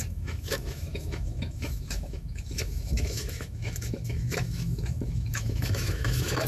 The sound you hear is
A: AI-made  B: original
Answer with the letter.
A